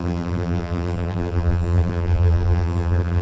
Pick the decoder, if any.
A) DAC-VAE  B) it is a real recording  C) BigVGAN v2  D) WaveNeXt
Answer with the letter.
C